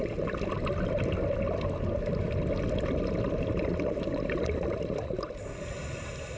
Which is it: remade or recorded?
recorded